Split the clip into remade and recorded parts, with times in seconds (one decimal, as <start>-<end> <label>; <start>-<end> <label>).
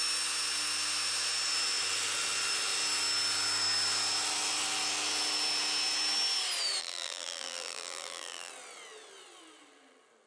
0.0-6.8 recorded; 6.8-8.5 remade; 8.5-10.3 recorded